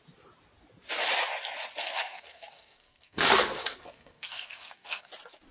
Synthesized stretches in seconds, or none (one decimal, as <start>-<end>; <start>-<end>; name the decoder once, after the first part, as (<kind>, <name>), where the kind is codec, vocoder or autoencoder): 1.8-5.1 (codec, SNAC)